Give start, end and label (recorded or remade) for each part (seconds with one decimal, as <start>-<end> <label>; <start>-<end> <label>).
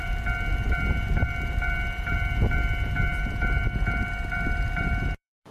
0.0-5.5 remade